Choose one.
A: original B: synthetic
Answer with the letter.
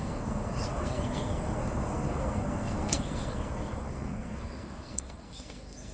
B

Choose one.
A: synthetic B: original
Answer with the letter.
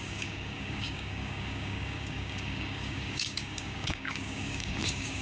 A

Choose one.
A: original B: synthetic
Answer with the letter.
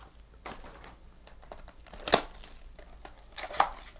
A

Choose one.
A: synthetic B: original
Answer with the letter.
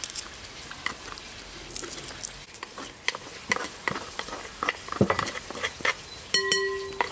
B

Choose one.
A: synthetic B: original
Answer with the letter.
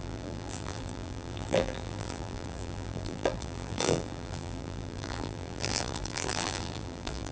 A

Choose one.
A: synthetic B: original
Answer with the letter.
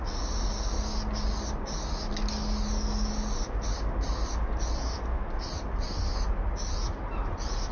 B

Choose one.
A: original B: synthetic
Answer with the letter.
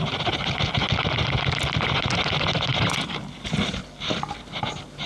A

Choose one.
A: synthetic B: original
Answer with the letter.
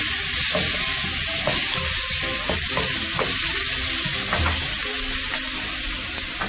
B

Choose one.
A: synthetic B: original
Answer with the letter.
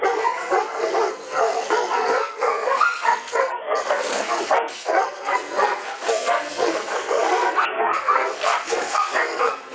A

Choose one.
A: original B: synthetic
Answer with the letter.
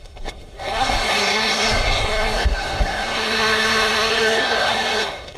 B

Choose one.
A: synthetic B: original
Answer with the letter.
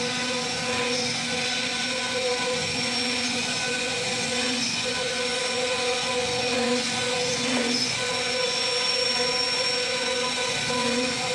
A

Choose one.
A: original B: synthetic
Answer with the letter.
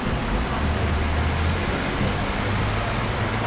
A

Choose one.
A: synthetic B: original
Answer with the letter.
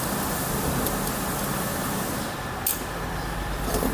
B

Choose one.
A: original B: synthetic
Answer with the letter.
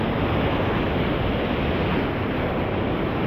A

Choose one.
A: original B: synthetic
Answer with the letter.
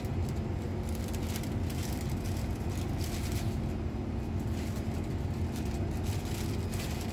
A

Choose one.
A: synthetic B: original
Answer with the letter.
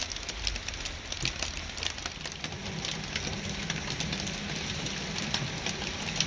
B